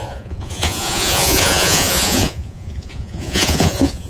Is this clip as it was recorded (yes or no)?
no